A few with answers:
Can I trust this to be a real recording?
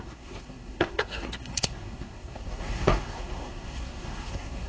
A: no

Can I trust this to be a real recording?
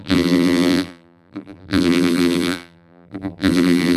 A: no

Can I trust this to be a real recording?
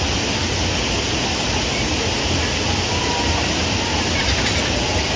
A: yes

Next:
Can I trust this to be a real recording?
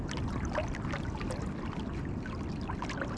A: yes